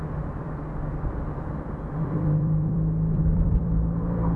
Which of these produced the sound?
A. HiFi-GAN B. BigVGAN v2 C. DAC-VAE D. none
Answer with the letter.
B